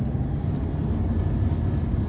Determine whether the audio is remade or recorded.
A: recorded